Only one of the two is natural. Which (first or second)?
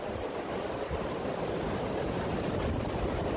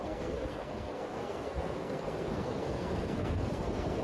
first